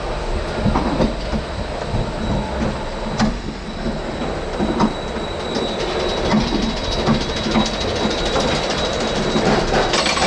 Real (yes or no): yes